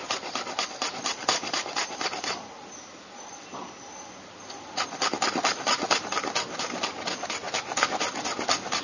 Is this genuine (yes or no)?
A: no